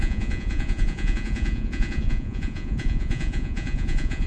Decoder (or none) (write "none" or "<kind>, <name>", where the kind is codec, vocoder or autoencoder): vocoder, Vocos